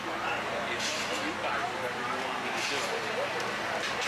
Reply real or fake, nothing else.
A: real